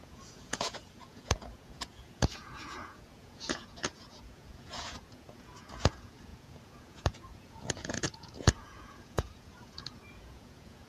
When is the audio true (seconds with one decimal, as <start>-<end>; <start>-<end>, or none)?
none